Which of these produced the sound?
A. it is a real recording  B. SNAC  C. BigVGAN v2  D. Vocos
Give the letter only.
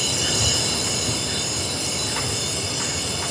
A